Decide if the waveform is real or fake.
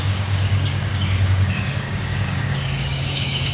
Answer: fake